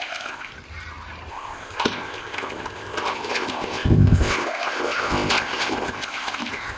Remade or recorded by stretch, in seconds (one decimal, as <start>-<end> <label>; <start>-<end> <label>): 0.0-0.5 remade; 0.5-1.3 recorded; 1.3-6.8 remade